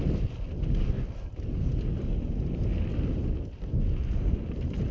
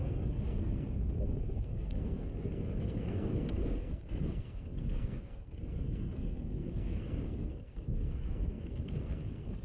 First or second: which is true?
first